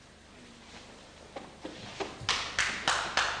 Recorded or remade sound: recorded